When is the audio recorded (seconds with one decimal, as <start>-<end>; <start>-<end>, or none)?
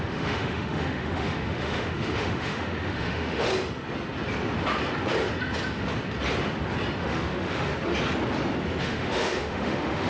3.5-7.0; 7.7-8.8